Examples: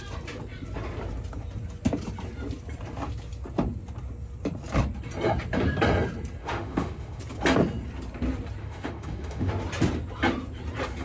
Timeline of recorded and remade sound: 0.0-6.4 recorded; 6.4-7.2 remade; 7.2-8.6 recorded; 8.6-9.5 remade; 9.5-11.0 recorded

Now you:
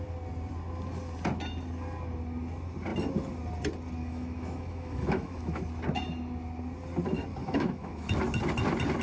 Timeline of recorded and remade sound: 0.0-4.0 recorded; 4.0-5.6 remade; 5.6-7.4 recorded; 7.4-8.1 remade; 8.1-9.0 recorded

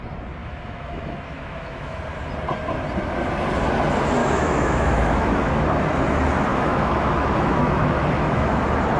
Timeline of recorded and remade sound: 0.0-0.4 recorded; 0.4-2.0 remade; 2.0-4.2 recorded; 4.2-5.5 remade; 5.5-6.5 recorded; 6.5-8.6 remade; 8.6-9.0 recorded